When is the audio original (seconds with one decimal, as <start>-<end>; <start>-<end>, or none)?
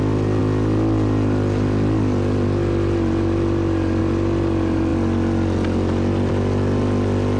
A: 0.0-7.4